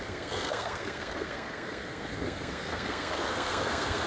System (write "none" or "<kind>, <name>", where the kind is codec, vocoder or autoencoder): codec, SNAC